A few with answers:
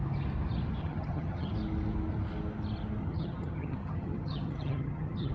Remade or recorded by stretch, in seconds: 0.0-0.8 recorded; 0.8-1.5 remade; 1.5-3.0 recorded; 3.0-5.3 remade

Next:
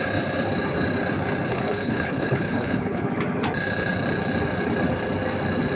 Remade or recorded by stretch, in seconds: 0.0-1.5 recorded; 1.5-3.1 remade; 3.1-5.8 recorded

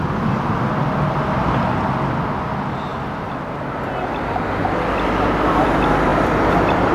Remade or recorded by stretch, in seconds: 0.0-6.1 recorded; 6.1-6.9 remade